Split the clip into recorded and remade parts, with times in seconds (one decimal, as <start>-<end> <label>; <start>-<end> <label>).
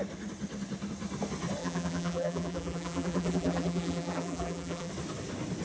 0.0-1.6 recorded; 1.6-4.9 remade; 4.9-5.6 recorded